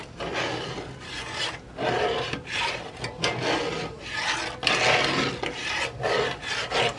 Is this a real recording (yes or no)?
yes